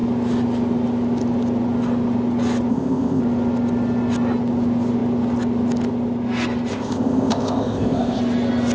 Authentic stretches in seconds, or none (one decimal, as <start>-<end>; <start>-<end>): 0.0-2.7; 3.2-6.7; 8.2-8.7